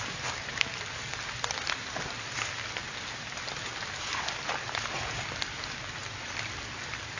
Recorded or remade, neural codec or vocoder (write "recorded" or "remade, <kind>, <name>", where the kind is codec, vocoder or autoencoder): recorded